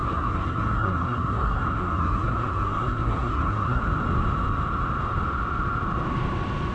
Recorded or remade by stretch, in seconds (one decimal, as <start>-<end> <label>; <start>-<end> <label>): 0.0-3.8 remade; 3.8-6.7 recorded